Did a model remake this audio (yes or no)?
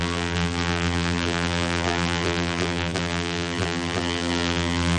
yes